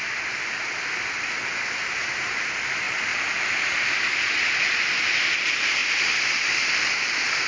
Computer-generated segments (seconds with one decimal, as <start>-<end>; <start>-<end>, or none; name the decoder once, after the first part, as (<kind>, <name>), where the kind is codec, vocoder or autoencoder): none